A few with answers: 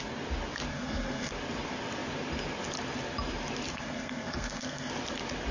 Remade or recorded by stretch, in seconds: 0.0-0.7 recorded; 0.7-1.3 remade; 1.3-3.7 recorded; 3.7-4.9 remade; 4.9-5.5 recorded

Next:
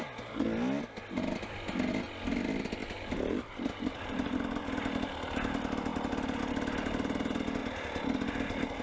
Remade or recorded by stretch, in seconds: 0.0-2.8 recorded; 2.8-4.8 remade; 4.8-5.9 recorded; 5.9-6.4 remade; 6.4-8.8 recorded

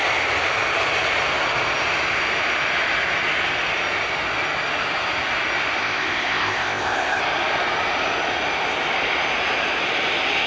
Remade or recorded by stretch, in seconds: 0.0-5.8 recorded; 5.8-7.2 remade; 7.2-10.5 recorded

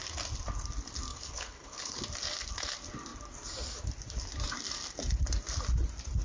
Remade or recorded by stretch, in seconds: 0.0-1.1 recorded; 1.1-2.0 remade; 2.0-6.2 recorded

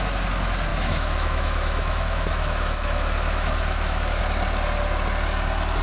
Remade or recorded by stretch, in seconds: 0.0-0.7 recorded; 0.7-4.2 remade; 4.2-5.8 recorded

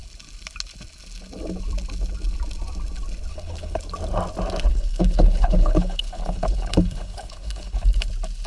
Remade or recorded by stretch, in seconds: 0.0-3.3 recorded; 3.3-3.8 remade; 3.8-4.7 recorded; 4.7-8.1 remade; 8.1-8.5 recorded